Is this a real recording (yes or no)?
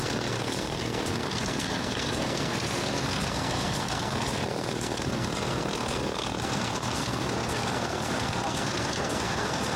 no